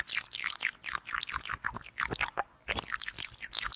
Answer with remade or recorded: recorded